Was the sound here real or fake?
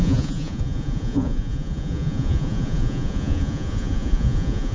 fake